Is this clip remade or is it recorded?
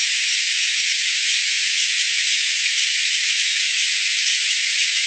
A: remade